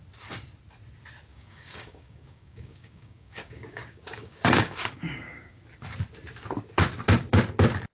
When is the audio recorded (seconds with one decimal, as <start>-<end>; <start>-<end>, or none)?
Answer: 0.0-1.3; 5.6-7.9